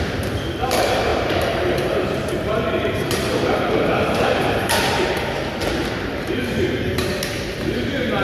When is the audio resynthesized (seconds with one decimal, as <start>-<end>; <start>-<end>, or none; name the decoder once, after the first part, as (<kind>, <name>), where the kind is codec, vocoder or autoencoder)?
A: 1.1-5.1 (vocoder, BigVGAN v2); 5.8-7.1